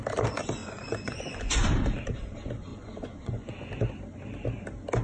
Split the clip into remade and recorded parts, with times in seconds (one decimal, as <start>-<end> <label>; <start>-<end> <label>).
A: 0.0-0.6 recorded; 0.6-1.7 remade; 1.7-2.7 recorded; 2.7-3.5 remade; 3.5-5.0 recorded